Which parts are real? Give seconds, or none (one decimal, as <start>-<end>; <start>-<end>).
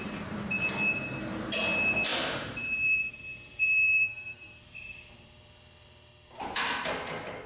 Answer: 0.0-2.1; 6.1-7.5